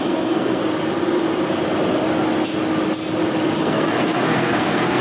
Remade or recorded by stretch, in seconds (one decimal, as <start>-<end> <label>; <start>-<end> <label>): 0.0-0.6 remade; 0.6-3.6 recorded; 3.6-5.0 remade